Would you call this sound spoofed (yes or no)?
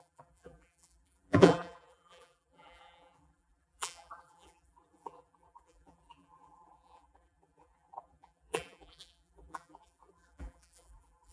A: yes